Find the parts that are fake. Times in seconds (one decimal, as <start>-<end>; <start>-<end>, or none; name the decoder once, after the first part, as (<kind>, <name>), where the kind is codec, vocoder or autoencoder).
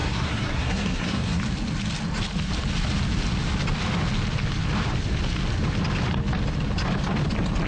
0.0-1.4 (codec, SNAC)